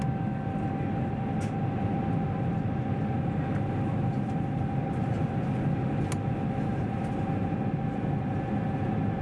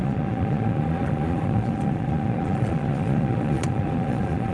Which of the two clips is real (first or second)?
first